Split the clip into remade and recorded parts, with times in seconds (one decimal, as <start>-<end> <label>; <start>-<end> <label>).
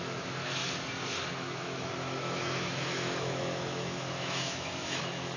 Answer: 0.0-0.6 remade; 0.6-1.3 recorded; 1.3-5.4 remade